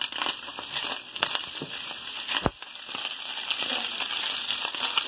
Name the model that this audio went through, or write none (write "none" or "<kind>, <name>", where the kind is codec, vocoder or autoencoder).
vocoder, BigVGAN v2